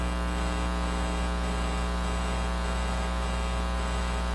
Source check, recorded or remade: recorded